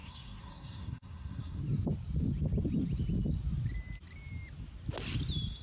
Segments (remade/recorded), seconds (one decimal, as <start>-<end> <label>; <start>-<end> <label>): 0.0-1.6 remade; 1.6-5.6 recorded